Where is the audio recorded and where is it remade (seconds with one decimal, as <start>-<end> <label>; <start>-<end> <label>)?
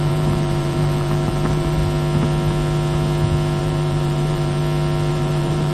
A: 0.0-1.8 remade; 1.8-3.6 recorded; 3.6-4.6 remade; 4.6-5.1 recorded; 5.1-5.7 remade